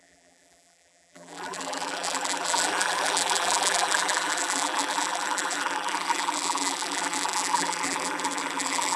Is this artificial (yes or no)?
yes